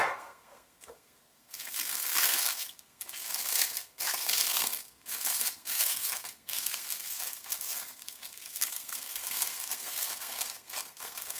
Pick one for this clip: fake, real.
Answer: fake